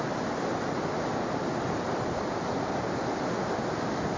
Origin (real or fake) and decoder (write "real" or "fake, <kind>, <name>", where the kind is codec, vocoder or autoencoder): real